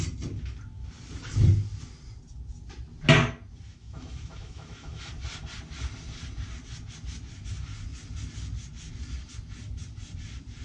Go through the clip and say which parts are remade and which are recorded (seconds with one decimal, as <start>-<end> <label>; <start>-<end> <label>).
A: 0.0-3.7 recorded; 3.7-5.1 remade; 5.1-10.6 recorded